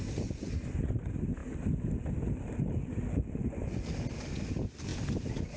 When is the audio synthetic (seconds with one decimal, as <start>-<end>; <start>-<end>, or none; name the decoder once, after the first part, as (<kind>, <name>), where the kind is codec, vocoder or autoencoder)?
none